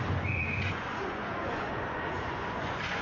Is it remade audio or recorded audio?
remade